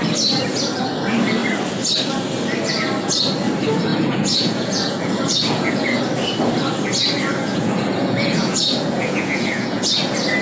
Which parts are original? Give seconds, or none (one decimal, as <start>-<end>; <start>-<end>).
0.0-3.9; 6.0-7.5; 9.8-10.4